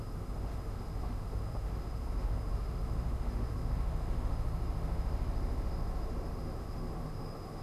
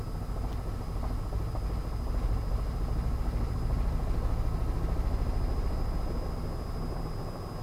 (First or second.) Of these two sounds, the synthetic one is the first